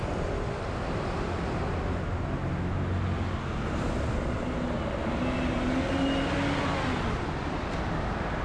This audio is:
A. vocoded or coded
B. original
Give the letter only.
B